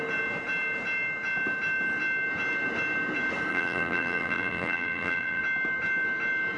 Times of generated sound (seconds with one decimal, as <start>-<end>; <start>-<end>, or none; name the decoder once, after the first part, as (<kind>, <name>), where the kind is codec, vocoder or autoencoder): 3.5-5.4 (vocoder, BigVGAN v2)